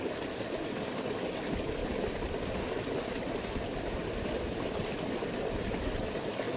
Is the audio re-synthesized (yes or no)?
no